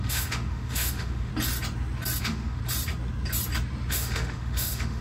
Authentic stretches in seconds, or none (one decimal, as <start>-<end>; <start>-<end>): 1.3-2.2; 2.6-3.9